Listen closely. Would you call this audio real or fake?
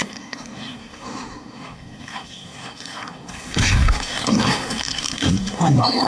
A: fake